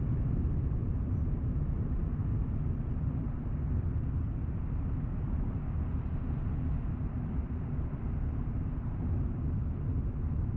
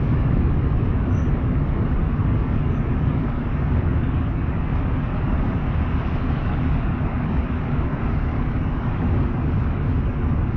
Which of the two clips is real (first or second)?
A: first